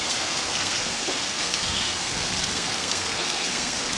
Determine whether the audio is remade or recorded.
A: remade